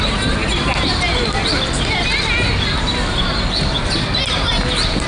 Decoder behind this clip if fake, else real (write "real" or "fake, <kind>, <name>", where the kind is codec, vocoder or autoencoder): real